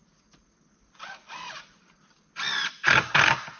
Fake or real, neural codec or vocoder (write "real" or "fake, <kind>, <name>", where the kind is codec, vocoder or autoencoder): real